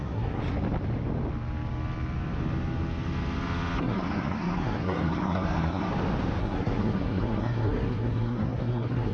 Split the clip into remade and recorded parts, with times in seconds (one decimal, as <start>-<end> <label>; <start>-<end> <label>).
0.0-0.4 remade; 0.4-3.8 recorded; 3.8-5.9 remade; 5.9-6.4 recorded; 6.4-9.1 remade